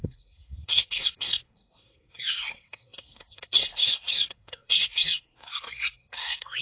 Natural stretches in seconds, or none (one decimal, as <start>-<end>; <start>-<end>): none